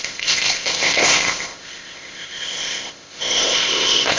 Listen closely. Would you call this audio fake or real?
fake